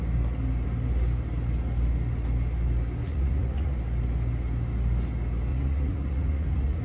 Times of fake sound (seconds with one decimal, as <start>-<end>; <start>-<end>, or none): 3.0-3.8; 5.5-6.8